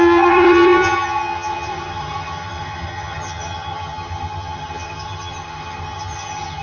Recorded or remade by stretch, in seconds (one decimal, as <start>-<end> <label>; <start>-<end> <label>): 0.0-6.6 remade